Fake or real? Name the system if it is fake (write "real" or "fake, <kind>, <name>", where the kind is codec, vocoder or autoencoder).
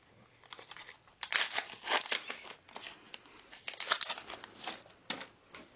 real